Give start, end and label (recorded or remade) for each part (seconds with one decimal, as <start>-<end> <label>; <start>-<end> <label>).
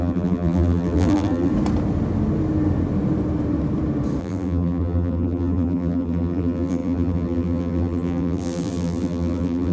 0.0-1.5 remade; 1.5-4.2 recorded; 4.2-9.7 remade